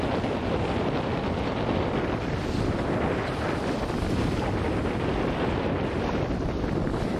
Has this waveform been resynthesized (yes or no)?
no